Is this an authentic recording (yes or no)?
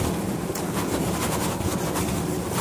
yes